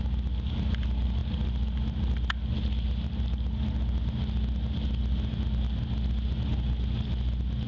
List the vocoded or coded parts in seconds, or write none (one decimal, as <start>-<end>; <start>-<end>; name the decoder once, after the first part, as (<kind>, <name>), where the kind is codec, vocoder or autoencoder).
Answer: none